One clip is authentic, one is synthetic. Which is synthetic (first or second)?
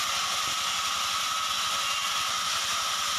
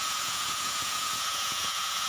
second